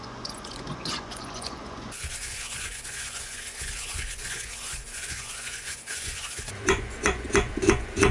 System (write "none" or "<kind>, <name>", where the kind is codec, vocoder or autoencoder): vocoder, Vocos